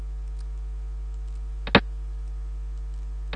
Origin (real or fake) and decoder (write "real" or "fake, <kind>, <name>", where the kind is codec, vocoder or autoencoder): real